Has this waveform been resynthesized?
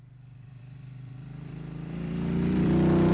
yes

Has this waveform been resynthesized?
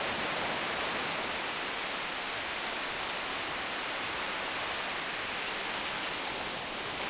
no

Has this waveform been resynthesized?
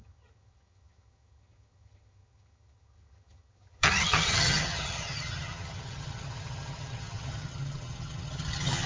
yes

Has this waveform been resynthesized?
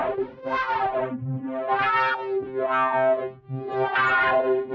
no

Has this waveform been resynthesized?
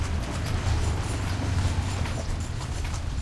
yes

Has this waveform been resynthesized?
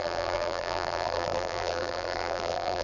yes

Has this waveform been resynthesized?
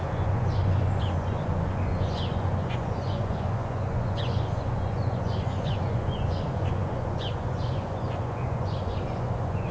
yes